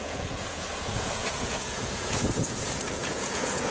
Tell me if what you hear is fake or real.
fake